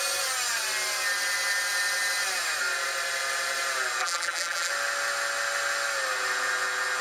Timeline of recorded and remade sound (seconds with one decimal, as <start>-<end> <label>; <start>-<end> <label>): 0.0-4.0 recorded; 4.0-4.7 remade; 4.7-7.0 recorded